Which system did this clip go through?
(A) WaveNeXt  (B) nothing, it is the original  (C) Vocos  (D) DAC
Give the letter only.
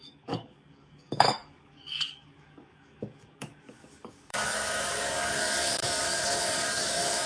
D